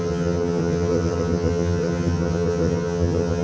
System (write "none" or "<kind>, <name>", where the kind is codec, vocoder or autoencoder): vocoder, HiFi-GAN